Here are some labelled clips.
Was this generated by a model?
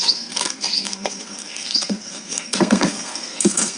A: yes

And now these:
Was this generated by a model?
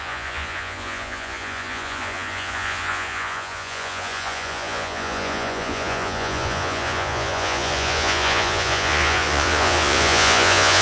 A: yes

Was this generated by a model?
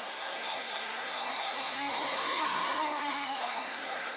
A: yes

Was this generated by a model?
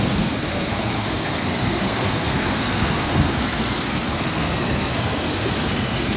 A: yes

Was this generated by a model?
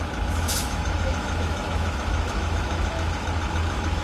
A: yes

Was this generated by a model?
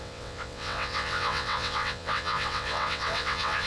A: yes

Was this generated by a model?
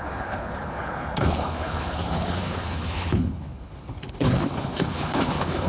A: yes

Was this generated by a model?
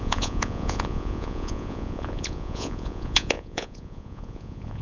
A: yes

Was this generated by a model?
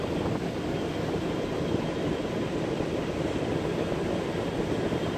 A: no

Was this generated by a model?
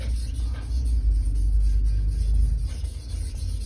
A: no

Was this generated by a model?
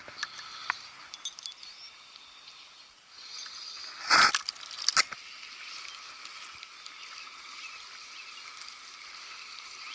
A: no